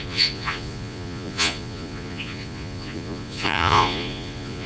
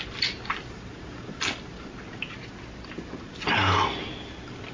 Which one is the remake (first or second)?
first